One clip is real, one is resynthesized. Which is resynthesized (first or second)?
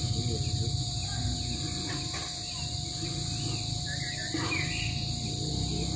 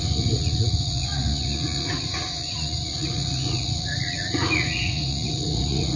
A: second